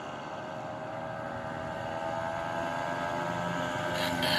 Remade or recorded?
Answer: recorded